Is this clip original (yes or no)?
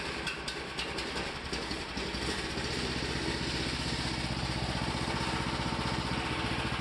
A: yes